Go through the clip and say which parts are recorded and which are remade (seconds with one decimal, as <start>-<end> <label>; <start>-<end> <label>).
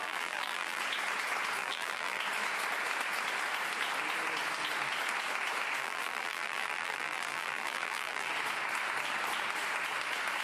0.0-0.8 remade; 0.8-1.6 recorded; 1.6-2.2 remade; 2.2-5.8 recorded; 5.8-8.3 remade; 8.3-10.4 recorded